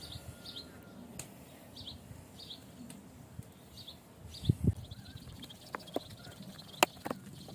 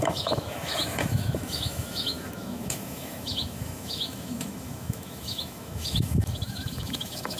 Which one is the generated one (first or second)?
second